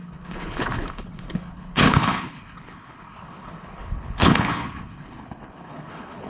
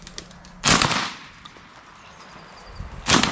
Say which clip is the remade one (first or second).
first